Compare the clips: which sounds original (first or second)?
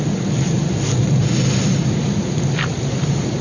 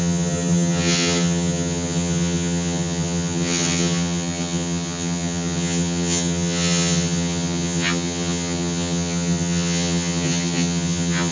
first